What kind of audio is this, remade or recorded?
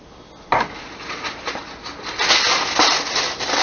recorded